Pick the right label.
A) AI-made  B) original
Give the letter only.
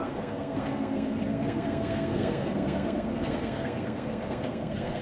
A